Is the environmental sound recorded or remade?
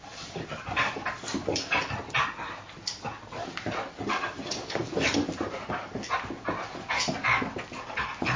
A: recorded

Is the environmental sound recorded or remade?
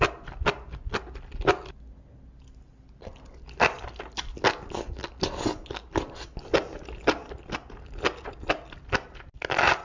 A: recorded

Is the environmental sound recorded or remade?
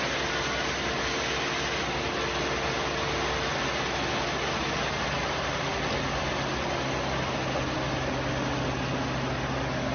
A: recorded